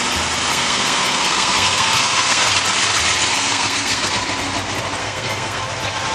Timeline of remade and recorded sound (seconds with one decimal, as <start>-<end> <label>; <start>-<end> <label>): 0.0-0.5 recorded; 0.5-2.5 remade; 2.5-3.3 recorded; 3.3-4.1 remade; 4.1-5.0 recorded; 5.0-5.6 remade; 5.6-6.1 recorded